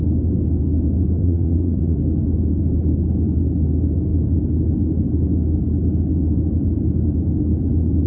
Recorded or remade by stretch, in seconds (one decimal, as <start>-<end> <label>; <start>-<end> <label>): 0.0-1.2 recorded; 1.2-2.0 remade; 2.0-8.1 recorded